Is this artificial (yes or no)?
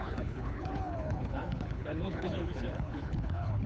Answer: yes